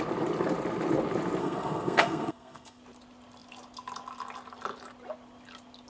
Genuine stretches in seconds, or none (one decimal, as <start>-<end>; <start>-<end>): 0.0-1.4; 2.8-5.9